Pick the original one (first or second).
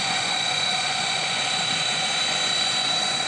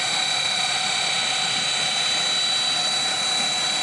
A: second